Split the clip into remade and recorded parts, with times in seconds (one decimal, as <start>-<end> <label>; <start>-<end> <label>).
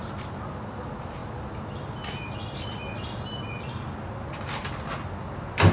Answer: 0.0-5.7 recorded